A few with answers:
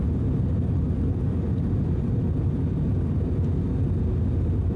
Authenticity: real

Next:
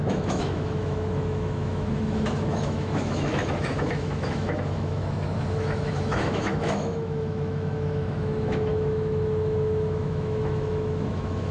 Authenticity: fake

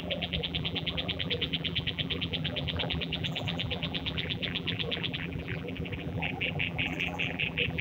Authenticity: fake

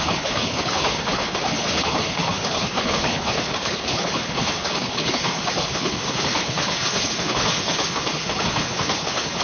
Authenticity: fake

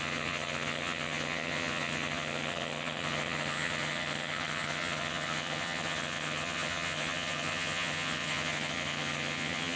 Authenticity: fake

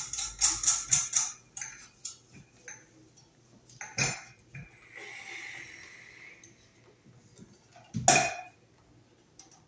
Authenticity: real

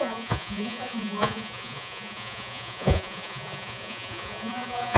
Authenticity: fake